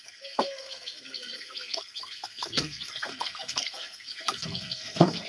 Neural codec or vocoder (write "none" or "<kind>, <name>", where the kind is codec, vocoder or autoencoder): codec, SNAC